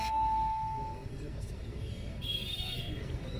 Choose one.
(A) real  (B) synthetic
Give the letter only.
B